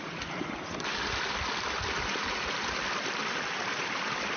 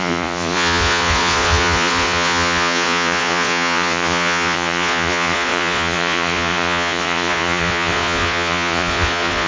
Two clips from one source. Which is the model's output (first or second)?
second